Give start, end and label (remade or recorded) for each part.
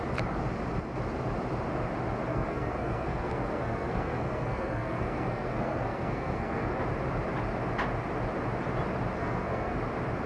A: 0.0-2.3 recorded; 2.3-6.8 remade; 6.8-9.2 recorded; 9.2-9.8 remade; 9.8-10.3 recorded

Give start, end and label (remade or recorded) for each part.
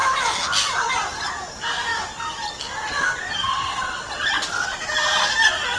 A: 0.0-3.4 recorded; 3.4-4.3 remade; 4.3-5.8 recorded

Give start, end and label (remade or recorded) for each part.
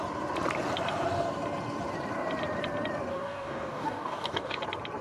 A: 0.0-3.1 recorded; 3.1-4.6 remade; 4.6-5.0 recorded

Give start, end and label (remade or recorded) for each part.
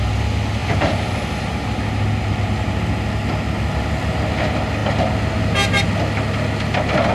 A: 0.0-0.6 recorded; 0.6-1.2 remade; 1.2-7.1 recorded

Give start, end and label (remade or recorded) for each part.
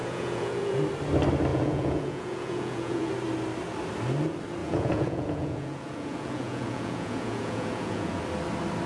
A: 0.0-0.8 remade; 0.8-1.5 recorded; 1.5-3.1 remade; 3.1-4.6 recorded; 4.6-8.2 remade; 8.2-8.9 recorded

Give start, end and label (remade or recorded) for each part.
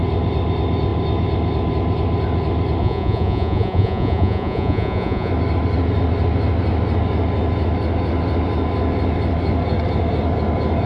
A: 0.0-2.8 recorded; 2.8-5.3 remade; 5.3-10.9 recorded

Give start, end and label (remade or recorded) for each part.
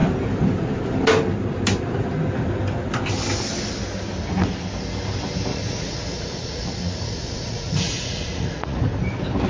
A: 0.0-5.5 recorded; 5.5-8.8 remade; 8.8-9.5 recorded